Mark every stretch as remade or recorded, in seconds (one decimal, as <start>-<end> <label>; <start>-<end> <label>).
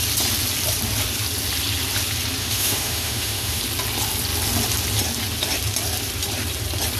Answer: 0.0-2.4 recorded; 2.4-3.6 remade; 3.6-7.0 recorded